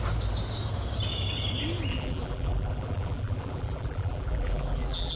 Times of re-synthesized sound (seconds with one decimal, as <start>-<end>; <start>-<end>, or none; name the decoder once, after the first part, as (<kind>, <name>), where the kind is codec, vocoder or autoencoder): 1.9-5.2 (vocoder, BigVGAN v2)